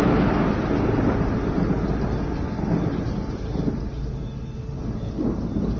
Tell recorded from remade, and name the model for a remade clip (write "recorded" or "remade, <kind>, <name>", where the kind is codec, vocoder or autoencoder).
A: recorded